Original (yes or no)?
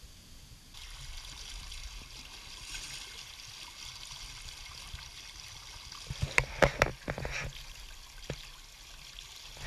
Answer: yes